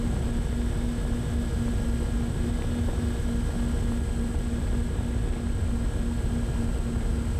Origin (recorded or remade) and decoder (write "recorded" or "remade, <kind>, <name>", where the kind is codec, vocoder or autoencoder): recorded